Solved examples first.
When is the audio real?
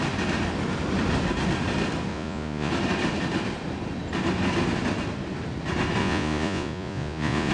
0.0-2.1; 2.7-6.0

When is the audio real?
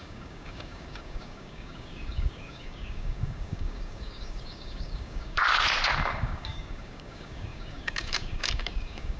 5.4-6.1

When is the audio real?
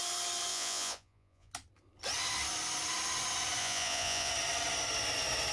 0.0-0.5; 1.5-3.6; 4.3-5.5